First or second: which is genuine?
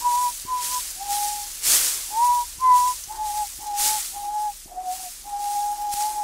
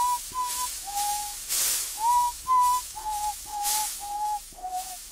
first